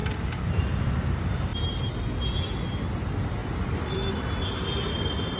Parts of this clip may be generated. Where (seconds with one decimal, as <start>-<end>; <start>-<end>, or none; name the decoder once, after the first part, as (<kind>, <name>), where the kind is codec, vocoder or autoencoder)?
0.0-0.8 (vocoder, BigVGAN v2); 3.4-4.1